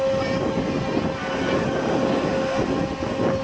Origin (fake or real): real